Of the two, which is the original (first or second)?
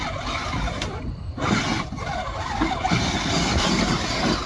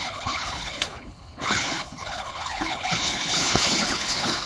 first